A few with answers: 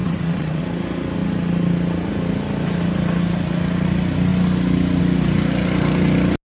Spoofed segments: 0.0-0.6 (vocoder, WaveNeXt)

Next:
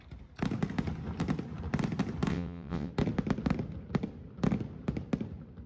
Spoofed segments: 2.3-2.9 (vocoder, WaveNeXt)

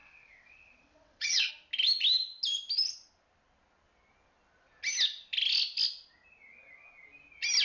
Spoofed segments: 0.0-1.5 (vocoder, WaveNeXt)

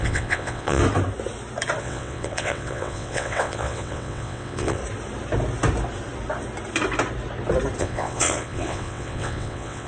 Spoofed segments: 0.0-0.8 (vocoder, WaveNeXt); 1.8-4.8; 7.8-9.9

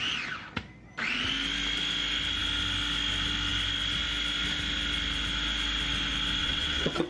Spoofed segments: 6.4-7.1 (vocoder, WaveNeXt)